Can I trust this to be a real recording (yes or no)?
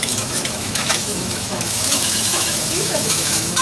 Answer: no